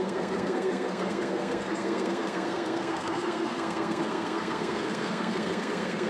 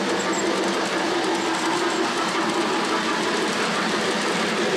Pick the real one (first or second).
second